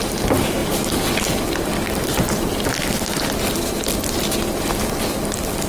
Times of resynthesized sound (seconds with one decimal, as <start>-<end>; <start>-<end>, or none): none